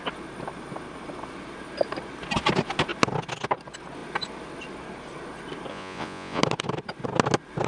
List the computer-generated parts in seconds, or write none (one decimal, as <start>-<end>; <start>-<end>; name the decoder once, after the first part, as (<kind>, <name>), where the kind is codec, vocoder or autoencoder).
5.7-6.4 (vocoder, Vocos)